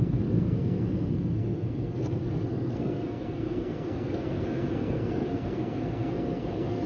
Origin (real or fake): fake